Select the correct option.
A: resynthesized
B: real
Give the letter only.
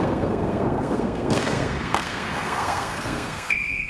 A